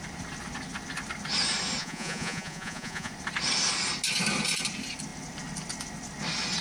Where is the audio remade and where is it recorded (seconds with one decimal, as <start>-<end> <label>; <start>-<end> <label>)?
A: 0.0-1.8 recorded; 1.8-3.1 remade; 3.1-6.6 recorded